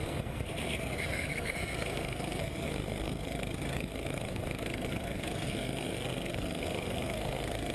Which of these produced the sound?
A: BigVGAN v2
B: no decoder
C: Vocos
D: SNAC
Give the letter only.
D